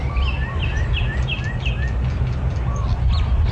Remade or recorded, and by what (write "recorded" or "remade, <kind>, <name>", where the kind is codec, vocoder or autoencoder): remade, vocoder, BigVGAN v2